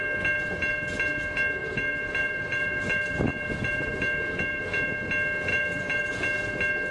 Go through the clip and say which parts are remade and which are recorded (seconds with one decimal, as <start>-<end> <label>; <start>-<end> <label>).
0.0-1.6 recorded; 1.6-4.6 remade; 4.6-5.5 recorded; 5.5-6.1 remade; 6.1-6.9 recorded